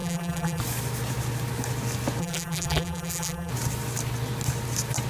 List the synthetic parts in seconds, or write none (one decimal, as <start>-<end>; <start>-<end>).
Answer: 0.0-0.6; 2.2-3.5